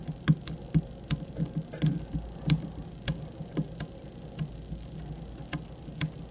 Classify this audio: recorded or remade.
recorded